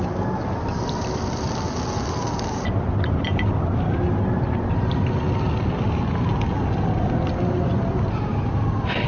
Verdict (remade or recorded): recorded